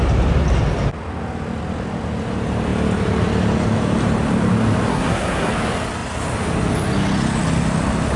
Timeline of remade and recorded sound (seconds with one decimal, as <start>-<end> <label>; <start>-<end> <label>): 0.0-4.9 recorded; 4.9-5.5 remade; 5.5-8.2 recorded